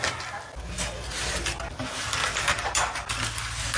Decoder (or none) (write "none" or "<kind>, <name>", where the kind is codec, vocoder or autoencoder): none